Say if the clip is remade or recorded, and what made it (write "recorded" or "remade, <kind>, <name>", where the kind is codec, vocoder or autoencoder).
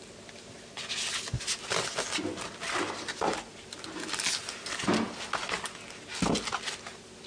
recorded